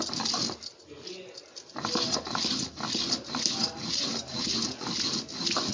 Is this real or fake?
real